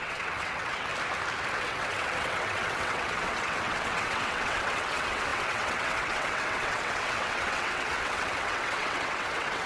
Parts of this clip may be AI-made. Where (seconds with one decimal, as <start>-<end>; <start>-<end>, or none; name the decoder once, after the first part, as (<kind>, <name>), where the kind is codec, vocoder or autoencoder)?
0.0-0.9 (vocoder, WaveNeXt); 1.5-9.7